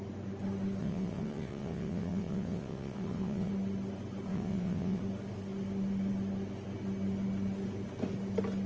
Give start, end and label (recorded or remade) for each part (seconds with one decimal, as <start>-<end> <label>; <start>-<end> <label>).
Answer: 0.0-0.8 recorded; 0.8-3.5 remade; 3.5-4.3 recorded; 4.3-5.0 remade; 5.0-8.7 recorded